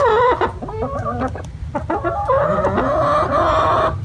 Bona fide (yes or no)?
yes